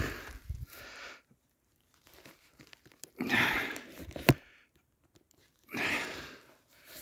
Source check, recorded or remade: remade